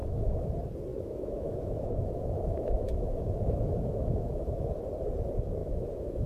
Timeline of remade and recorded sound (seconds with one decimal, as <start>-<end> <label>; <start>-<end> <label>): 0.0-0.5 remade; 0.5-0.9 recorded; 0.9-4.7 remade; 4.7-5.6 recorded; 5.6-6.3 remade